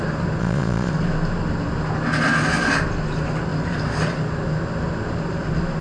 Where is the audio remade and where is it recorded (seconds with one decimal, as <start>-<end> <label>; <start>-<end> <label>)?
0.0-0.4 recorded; 0.4-0.9 remade; 0.9-5.8 recorded